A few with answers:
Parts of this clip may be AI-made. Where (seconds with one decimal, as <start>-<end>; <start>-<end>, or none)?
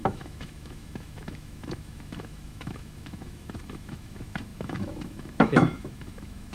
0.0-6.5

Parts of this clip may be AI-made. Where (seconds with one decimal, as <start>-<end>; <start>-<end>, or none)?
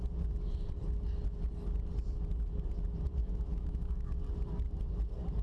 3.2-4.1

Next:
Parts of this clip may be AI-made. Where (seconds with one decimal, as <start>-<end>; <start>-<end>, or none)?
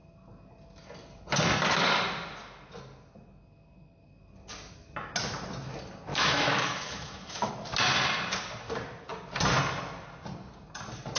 6.1-7.5